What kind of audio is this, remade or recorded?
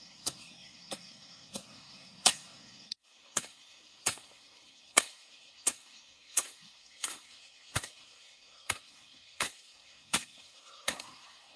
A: remade